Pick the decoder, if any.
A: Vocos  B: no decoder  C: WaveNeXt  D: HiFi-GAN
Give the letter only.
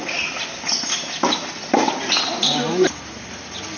B